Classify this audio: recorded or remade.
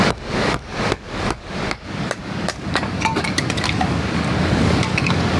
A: remade